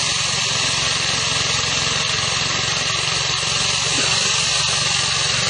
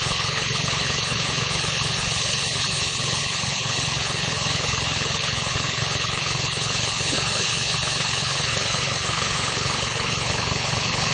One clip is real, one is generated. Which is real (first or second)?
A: first